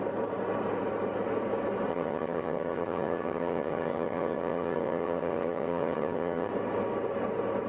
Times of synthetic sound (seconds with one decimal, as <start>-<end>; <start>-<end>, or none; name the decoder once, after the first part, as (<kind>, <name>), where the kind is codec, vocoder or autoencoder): 1.9-6.5 (vocoder, HiFi-GAN)